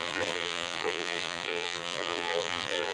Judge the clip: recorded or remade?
remade